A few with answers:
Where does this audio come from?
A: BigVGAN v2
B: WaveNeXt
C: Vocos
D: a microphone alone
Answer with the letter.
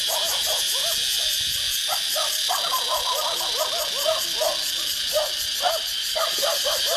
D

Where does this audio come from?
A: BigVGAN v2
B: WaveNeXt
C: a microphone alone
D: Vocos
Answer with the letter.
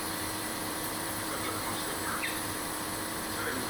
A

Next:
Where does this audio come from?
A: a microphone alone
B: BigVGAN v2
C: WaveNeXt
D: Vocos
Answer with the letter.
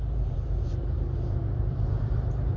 B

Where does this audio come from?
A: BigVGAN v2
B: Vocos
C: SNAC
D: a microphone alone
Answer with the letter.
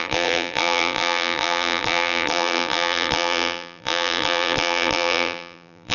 A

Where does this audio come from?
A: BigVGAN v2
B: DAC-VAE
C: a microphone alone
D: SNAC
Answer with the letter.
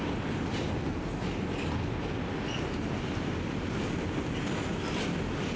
C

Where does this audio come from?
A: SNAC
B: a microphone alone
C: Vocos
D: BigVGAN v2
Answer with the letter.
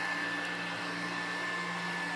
B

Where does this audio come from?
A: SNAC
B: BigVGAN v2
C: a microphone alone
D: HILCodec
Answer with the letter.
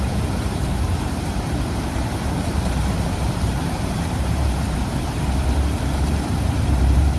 B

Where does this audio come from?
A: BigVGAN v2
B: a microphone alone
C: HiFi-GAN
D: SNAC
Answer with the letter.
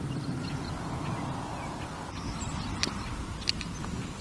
B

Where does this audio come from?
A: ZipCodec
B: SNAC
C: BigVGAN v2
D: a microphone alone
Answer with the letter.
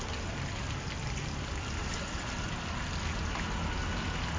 D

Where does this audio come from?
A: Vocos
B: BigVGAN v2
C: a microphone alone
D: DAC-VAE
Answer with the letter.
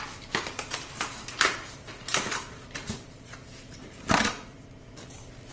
B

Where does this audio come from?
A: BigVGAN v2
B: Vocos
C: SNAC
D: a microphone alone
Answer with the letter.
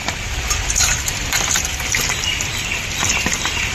A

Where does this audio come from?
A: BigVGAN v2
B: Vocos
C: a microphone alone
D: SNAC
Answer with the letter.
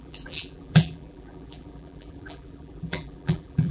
A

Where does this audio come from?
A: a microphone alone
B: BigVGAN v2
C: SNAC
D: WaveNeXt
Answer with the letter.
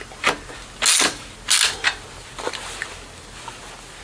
A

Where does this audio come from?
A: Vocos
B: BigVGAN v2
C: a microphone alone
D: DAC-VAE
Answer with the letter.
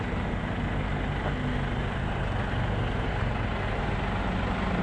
C